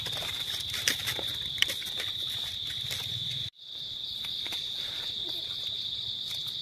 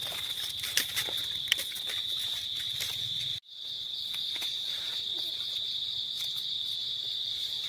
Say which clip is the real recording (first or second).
second